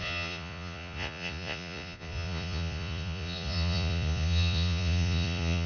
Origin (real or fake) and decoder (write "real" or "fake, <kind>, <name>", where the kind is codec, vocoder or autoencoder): fake, vocoder, Vocos